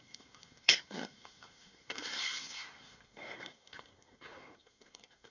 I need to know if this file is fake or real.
fake